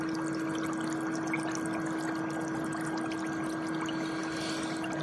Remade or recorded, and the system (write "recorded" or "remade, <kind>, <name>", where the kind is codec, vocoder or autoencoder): recorded